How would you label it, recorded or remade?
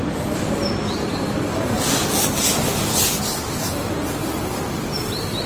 recorded